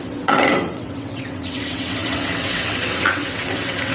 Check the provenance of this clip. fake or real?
fake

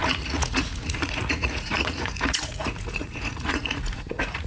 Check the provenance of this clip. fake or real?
fake